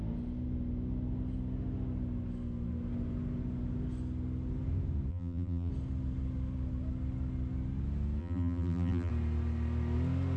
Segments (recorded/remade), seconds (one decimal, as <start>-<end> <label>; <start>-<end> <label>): 0.0-5.1 recorded; 5.1-5.7 remade; 5.7-8.2 recorded; 8.2-9.1 remade; 9.1-10.4 recorded